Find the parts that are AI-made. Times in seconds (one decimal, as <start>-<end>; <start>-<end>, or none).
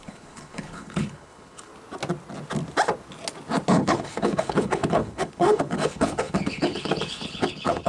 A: 0.0-1.7; 3.7-7.9